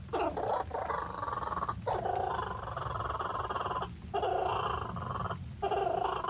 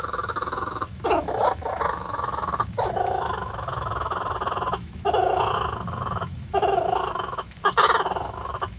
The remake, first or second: second